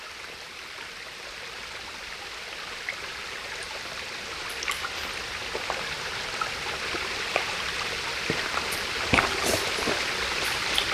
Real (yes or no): yes